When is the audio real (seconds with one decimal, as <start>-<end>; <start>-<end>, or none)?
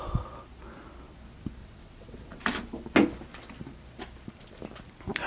0.0-1.6; 2.4-5.3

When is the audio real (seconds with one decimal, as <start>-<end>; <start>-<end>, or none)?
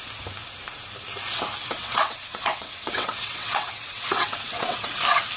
0.0-1.8; 5.0-5.4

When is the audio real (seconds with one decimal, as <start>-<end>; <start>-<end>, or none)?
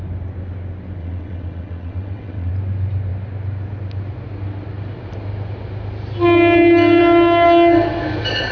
0.0-1.0; 2.5-8.5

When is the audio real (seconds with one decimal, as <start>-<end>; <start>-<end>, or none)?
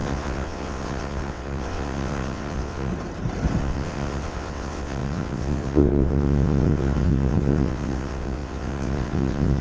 2.9-3.6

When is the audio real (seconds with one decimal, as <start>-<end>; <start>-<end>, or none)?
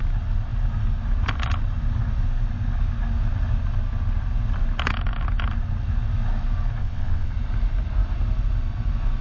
0.0-6.8; 7.3-9.2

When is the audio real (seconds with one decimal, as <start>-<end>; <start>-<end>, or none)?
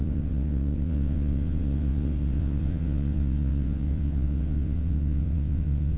none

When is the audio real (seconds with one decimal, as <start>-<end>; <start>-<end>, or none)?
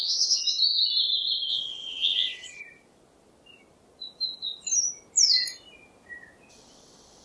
0.4-1.5; 2.6-6.5